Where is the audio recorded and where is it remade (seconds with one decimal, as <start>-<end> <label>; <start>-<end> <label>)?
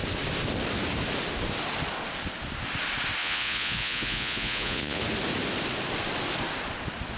0.0-3.2 recorded; 3.2-5.0 remade; 5.0-7.2 recorded